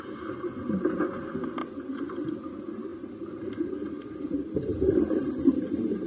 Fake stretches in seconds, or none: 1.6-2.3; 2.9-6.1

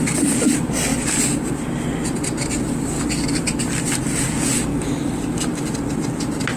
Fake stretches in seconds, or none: 0.0-6.6

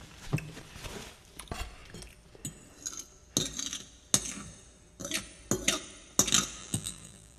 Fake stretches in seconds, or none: 6.6-7.4

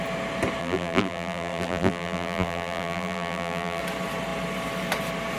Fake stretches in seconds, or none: 0.6-3.8